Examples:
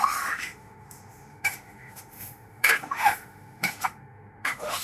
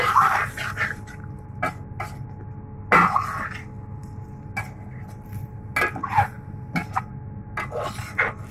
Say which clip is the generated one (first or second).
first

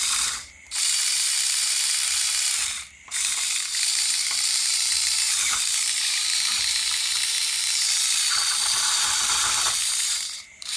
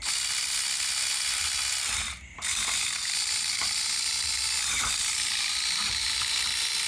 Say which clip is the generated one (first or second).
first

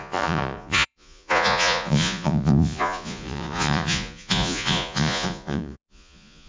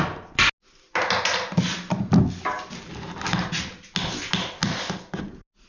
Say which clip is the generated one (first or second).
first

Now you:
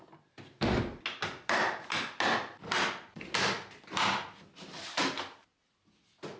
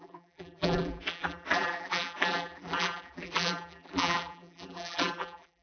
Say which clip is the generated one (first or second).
second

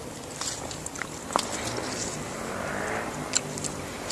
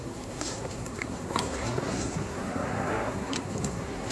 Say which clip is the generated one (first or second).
second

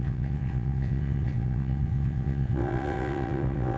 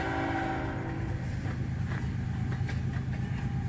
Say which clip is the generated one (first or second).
first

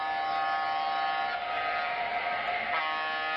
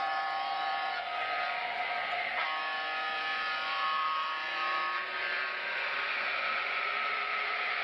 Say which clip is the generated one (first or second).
second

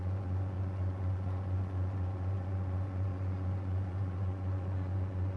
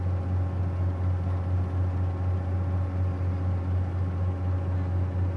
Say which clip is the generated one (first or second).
first